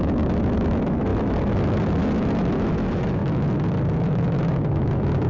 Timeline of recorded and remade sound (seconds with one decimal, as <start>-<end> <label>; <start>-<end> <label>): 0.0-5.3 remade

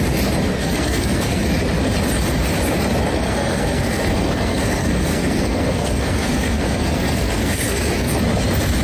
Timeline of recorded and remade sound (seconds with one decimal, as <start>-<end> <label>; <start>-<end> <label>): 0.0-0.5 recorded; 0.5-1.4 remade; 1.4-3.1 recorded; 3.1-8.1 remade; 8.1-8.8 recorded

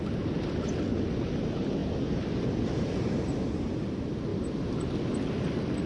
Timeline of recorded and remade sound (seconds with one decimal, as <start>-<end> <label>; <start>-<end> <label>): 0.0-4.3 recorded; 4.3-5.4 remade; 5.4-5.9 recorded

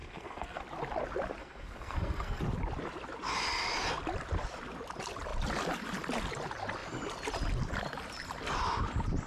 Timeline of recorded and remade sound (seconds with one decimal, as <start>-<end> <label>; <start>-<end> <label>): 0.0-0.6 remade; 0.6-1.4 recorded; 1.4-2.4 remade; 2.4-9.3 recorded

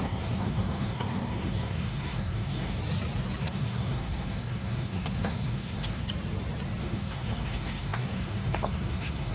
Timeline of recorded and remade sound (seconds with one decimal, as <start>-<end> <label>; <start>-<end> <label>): 0.0-2.8 remade; 2.8-3.4 recorded; 3.4-6.1 remade; 6.1-6.8 recorded; 6.8-9.3 remade

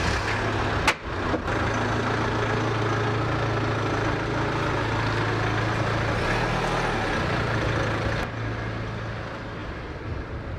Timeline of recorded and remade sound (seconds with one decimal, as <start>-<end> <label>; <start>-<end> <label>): 0.0-9.6 recorded; 9.6-10.6 remade